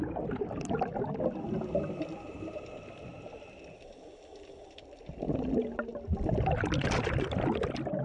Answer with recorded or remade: recorded